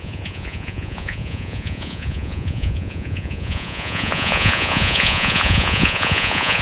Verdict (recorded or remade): remade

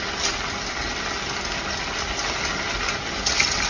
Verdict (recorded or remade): recorded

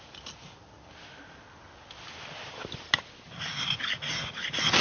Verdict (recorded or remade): recorded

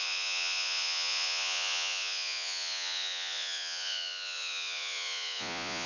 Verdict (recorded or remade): remade